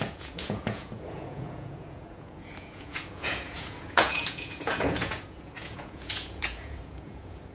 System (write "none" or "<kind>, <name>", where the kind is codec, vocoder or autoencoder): vocoder, Vocos